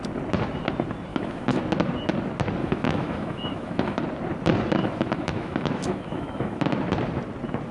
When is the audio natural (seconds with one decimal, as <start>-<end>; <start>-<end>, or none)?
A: 0.0-1.1; 1.6-2.6; 4.0-4.8; 6.6-7.7